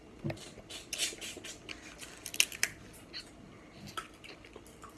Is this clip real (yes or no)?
yes